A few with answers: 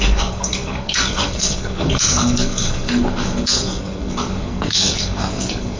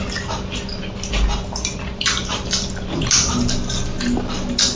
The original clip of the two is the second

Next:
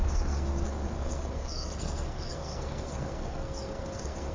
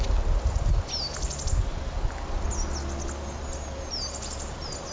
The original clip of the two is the second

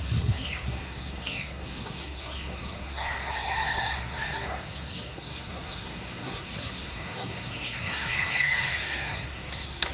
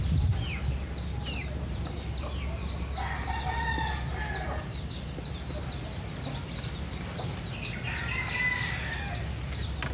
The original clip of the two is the second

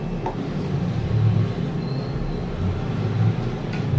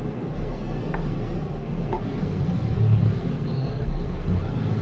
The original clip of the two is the first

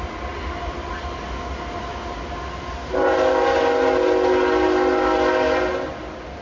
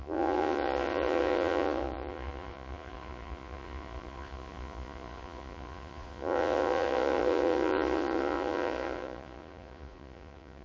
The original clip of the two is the first